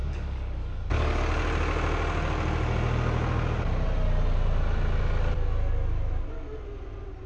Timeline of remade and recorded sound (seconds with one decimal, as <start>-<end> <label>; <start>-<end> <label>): 0.0-1.2 remade; 1.2-7.3 recorded

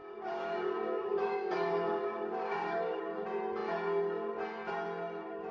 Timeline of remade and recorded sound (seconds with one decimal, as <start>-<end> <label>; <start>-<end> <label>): 0.0-3.0 remade; 3.0-5.5 recorded

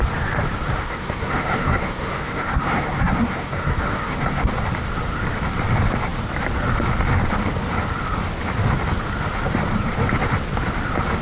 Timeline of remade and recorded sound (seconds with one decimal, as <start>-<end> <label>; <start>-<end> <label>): 0.0-0.8 recorded; 0.8-4.5 remade; 4.5-11.2 recorded